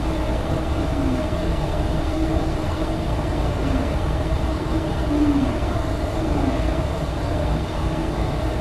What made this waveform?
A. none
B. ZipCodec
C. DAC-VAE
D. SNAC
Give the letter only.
D